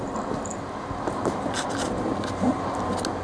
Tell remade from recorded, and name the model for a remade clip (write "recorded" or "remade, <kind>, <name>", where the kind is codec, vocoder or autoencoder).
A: recorded